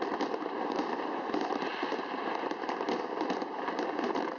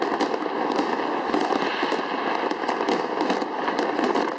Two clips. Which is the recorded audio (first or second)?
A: second